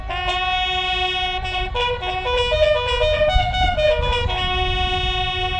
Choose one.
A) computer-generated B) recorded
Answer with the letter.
B